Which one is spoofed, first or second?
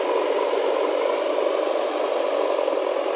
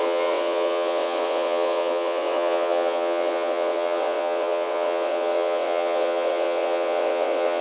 second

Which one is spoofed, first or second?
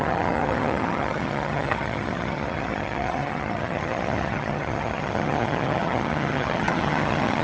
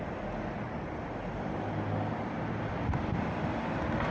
first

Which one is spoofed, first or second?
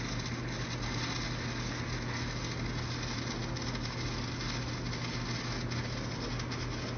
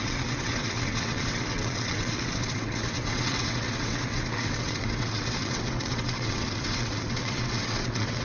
second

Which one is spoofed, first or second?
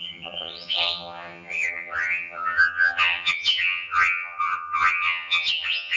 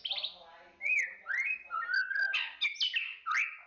first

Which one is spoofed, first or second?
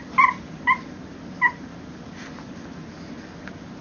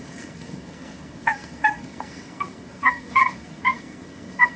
second